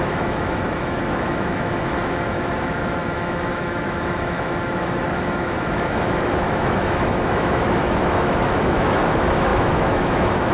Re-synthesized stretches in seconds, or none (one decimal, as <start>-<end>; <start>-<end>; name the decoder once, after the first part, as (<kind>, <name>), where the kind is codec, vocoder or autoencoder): 0.0-10.5 (autoencoder, DAC-VAE)

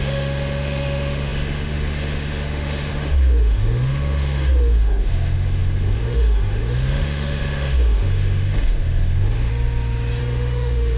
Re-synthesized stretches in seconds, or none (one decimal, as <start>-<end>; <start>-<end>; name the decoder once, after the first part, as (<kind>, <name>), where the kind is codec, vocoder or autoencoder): 0.0-9.5 (autoencoder, DAC-VAE); 10.2-11.0

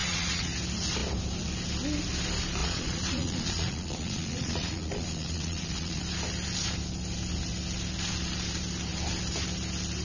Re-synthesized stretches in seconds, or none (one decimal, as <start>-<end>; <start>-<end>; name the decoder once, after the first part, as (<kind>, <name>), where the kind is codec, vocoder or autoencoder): 0.0-0.5 (vocoder, Vocos); 2.6-6.0

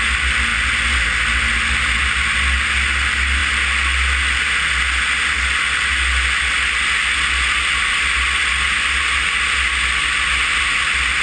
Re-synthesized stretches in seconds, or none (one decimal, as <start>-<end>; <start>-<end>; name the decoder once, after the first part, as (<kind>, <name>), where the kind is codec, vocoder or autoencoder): none

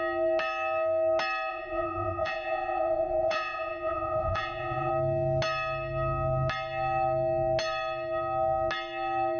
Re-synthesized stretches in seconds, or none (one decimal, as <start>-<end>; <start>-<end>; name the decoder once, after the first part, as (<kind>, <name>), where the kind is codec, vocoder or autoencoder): 1.5-4.9 (vocoder, Vocos)

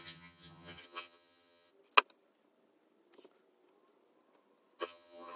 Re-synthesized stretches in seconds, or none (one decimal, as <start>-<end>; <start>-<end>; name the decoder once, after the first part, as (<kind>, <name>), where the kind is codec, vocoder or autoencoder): 0.0-1.7 (vocoder, HiFi-GAN); 4.8-5.4

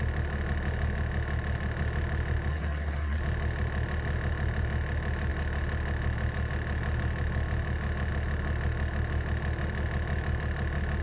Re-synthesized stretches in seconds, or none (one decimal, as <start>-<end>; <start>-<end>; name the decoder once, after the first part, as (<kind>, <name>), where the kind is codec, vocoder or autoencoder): 2.5-3.2 (codec, SNAC)